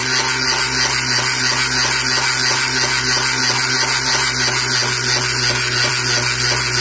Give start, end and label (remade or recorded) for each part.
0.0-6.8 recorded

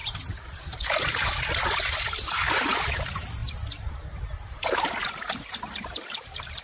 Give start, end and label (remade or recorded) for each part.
0.0-3.4 remade; 3.4-6.0 recorded; 6.0-6.6 remade

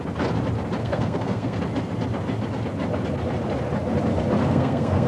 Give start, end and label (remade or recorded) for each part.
0.0-0.8 recorded; 0.8-1.6 remade; 1.6-4.4 recorded; 4.4-5.1 remade

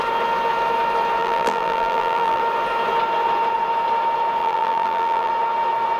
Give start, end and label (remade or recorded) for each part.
0.0-1.2 recorded; 1.2-2.4 remade; 2.4-4.4 recorded; 4.4-5.3 remade; 5.3-6.0 recorded

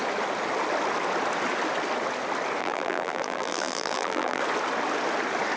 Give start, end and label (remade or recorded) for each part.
0.0-2.6 recorded; 2.6-4.4 remade; 4.4-5.6 recorded

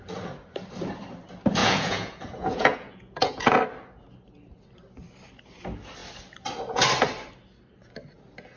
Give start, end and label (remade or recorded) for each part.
0.0-1.6 recorded; 1.6-3.6 remade; 3.6-8.6 recorded